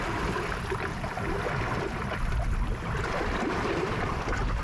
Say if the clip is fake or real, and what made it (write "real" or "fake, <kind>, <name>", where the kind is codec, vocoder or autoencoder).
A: real